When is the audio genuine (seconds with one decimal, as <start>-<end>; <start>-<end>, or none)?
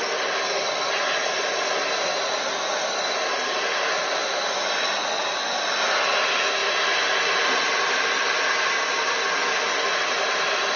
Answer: 0.0-10.8